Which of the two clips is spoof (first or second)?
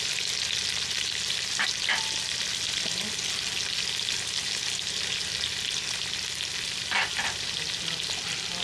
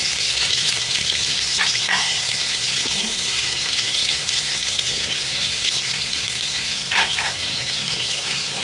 second